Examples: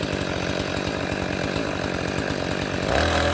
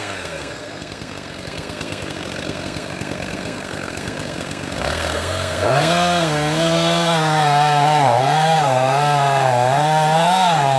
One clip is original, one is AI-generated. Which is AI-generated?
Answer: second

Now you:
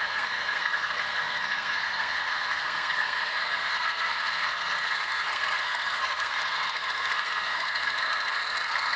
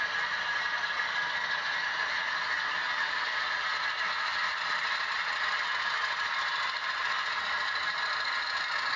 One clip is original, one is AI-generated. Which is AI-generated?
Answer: first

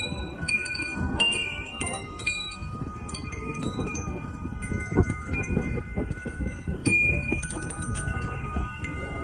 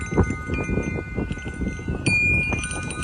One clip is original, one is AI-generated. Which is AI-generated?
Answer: first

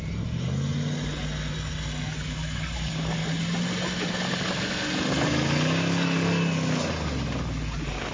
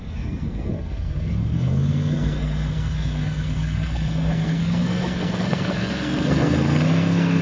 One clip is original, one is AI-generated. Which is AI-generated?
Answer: second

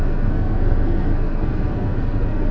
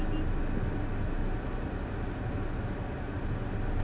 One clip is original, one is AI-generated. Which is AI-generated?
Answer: first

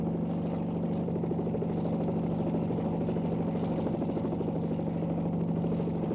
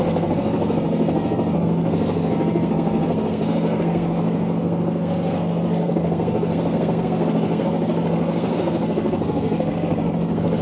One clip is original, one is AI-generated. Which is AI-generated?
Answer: second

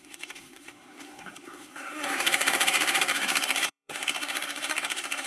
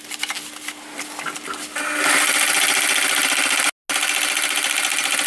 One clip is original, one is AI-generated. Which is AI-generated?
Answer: first